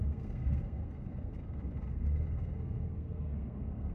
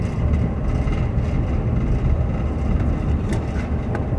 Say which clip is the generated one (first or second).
first